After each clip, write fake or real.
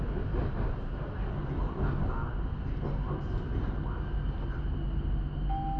real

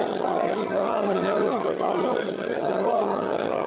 fake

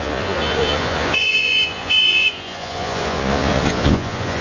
fake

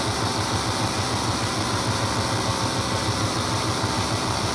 real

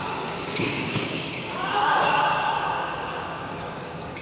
fake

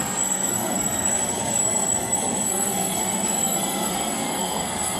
fake